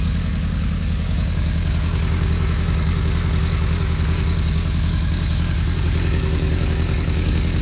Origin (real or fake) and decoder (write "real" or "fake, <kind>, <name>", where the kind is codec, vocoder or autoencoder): fake, codec, DAC